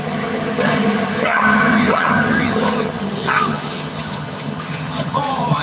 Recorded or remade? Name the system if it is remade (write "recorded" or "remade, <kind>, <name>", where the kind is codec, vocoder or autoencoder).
remade, vocoder, HiFi-GAN